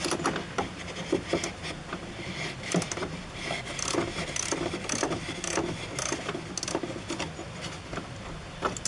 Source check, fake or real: real